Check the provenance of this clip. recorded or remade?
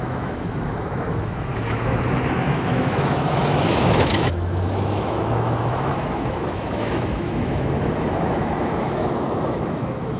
remade